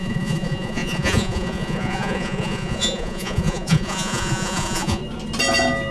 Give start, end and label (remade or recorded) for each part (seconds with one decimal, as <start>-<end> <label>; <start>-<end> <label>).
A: 0.0-5.0 remade; 5.0-5.9 recorded